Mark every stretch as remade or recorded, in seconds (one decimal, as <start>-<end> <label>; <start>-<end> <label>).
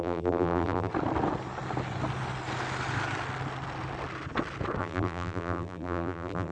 0.0-0.9 remade; 0.9-4.8 recorded; 4.8-6.5 remade